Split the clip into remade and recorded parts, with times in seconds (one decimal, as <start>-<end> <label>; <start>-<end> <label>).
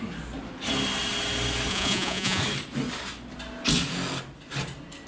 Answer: 0.0-1.7 recorded; 1.7-2.4 remade; 2.4-5.1 recorded